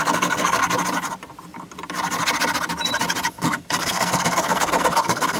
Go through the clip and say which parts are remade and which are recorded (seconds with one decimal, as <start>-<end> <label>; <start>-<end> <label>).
0.0-0.6 remade; 0.6-3.3 recorded; 3.3-5.4 remade